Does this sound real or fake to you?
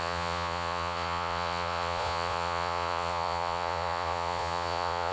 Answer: fake